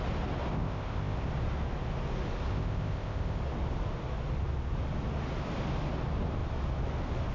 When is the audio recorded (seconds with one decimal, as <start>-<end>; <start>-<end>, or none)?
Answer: 0.0-0.5; 1.3-2.5; 3.4-7.3